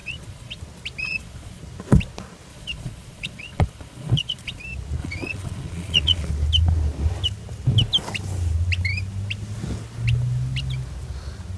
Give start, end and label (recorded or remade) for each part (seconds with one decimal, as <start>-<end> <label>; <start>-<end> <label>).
0.0-0.6 remade; 0.6-1.0 recorded; 1.0-1.6 remade; 1.6-2.5 recorded; 2.5-4.6 remade; 4.6-5.0 recorded; 5.0-6.3 remade; 6.3-11.6 recorded